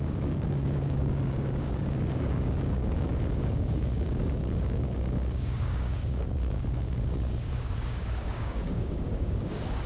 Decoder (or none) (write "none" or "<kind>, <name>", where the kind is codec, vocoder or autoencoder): codec, DAC